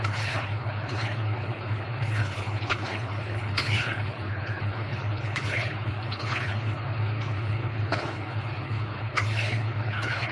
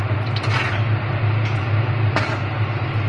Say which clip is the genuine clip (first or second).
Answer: second